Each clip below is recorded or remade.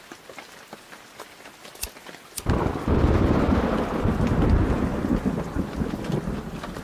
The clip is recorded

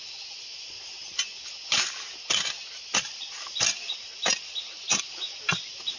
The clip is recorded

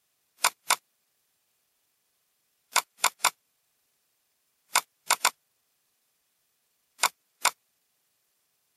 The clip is remade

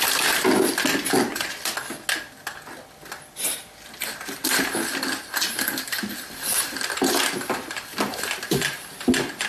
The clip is recorded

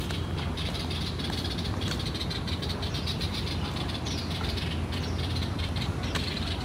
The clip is remade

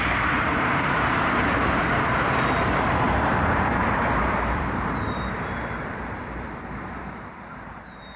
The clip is remade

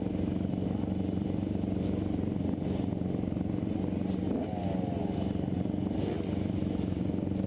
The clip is recorded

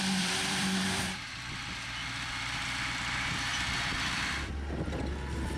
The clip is remade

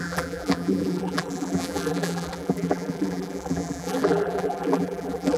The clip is remade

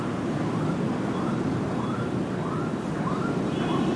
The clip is recorded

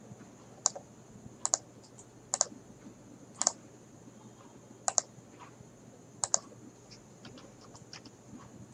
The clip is recorded